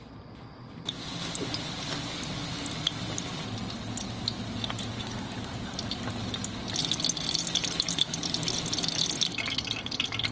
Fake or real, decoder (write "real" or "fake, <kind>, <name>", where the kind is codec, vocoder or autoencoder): real